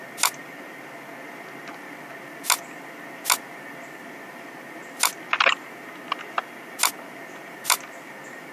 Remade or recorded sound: recorded